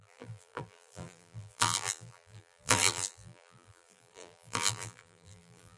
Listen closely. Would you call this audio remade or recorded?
remade